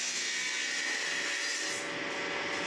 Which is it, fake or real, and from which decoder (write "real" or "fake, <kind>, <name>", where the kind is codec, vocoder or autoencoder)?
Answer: real